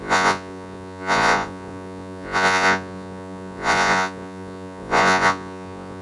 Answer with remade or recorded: remade